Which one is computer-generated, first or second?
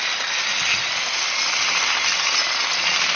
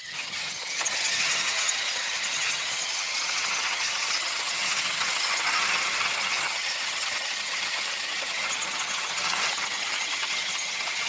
second